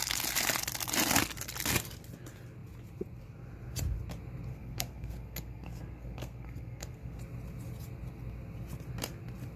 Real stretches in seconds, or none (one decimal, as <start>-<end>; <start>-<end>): 0.0-4.5; 7.2-9.6